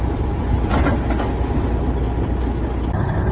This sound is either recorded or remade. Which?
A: recorded